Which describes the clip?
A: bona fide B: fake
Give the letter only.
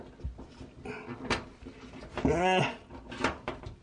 A